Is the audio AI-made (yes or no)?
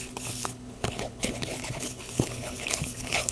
yes